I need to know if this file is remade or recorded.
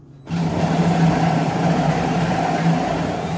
remade